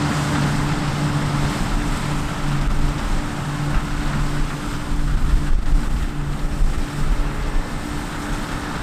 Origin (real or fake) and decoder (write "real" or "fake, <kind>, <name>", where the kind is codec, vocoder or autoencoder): real